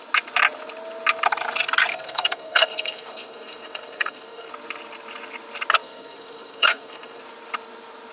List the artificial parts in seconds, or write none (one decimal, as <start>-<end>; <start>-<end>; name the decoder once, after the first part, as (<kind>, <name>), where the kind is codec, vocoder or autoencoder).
1.9-4.5 (codec, SNAC); 5.8-7.2